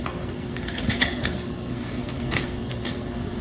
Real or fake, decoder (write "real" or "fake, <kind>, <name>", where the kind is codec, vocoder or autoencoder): fake, codec, SNAC